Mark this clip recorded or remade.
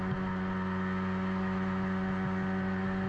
recorded